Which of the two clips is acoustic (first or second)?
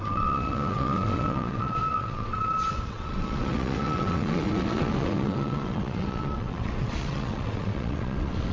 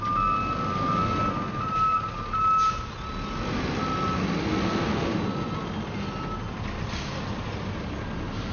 second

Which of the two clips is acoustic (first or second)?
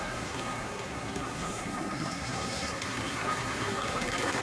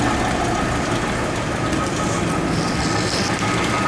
second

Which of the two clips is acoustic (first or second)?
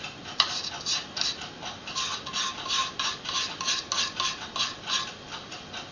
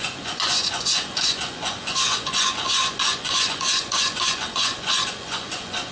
first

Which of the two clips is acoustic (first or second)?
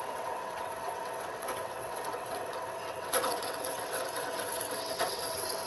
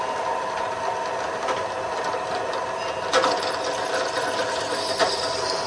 second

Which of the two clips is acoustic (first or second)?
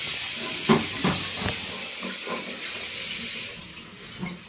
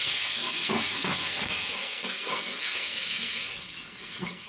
first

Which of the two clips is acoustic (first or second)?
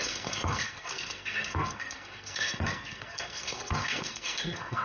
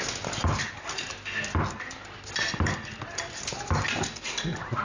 second